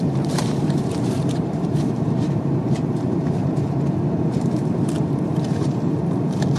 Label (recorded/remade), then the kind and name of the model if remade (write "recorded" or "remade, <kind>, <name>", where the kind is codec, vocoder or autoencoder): remade, vocoder, BigVGAN v2